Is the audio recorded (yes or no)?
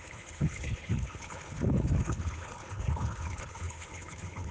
no